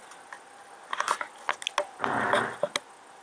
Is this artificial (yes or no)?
no